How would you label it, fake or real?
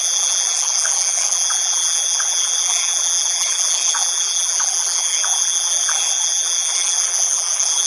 fake